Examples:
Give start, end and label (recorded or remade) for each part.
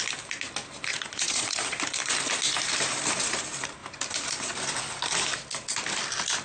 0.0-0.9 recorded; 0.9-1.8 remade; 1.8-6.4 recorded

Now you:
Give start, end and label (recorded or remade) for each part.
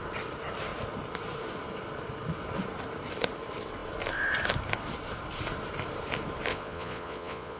0.0-6.5 recorded; 6.5-7.6 remade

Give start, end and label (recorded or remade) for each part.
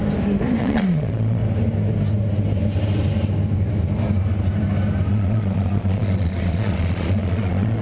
0.0-0.6 recorded; 0.6-1.4 remade; 1.4-5.1 recorded; 5.1-7.8 remade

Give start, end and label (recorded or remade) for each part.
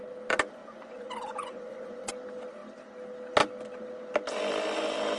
0.0-0.6 recorded; 0.6-2.1 remade; 2.1-5.2 recorded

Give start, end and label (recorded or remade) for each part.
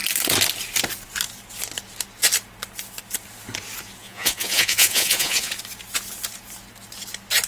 0.0-4.0 recorded; 4.0-5.5 remade; 5.5-7.5 recorded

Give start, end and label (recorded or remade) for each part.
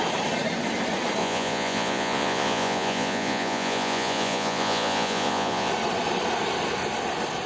0.0-1.2 recorded; 1.2-5.7 remade; 5.7-7.5 recorded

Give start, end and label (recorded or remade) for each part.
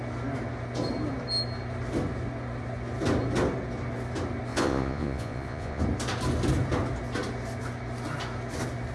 0.0-4.5 recorded; 4.5-5.8 remade; 5.8-8.9 recorded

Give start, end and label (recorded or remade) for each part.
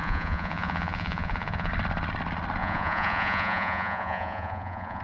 0.0-1.7 remade; 1.7-2.6 recorded; 2.6-5.0 remade